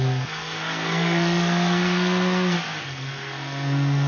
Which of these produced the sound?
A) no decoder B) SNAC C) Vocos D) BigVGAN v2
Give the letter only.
B